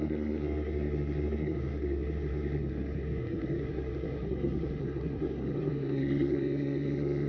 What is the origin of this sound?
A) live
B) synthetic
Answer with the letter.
B